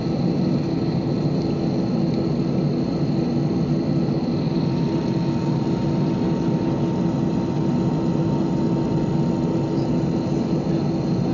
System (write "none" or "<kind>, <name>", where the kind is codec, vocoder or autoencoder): none